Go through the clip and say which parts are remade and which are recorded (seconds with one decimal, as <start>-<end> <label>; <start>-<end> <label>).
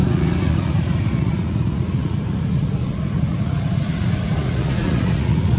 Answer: 0.0-5.6 remade